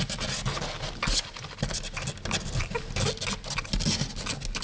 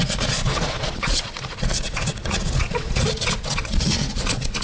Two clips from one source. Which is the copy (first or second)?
second